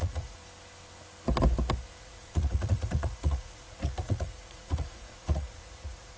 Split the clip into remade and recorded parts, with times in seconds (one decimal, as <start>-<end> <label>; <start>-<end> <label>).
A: 0.0-0.4 remade; 0.4-2.0 recorded; 2.0-6.2 remade